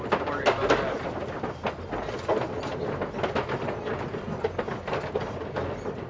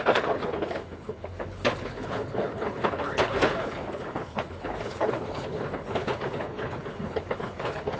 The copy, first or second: second